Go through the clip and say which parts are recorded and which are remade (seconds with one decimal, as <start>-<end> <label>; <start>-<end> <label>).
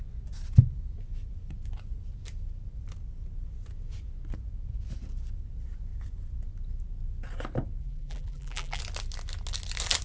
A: 0.0-7.8 recorded; 7.8-8.8 remade; 8.8-10.0 recorded